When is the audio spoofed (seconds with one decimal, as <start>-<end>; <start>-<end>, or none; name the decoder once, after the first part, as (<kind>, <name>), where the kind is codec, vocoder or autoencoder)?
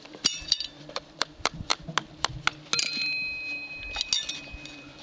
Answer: 0.0-1.7 (vocoder, BigVGAN v2)